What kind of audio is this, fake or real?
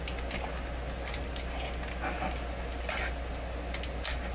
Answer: real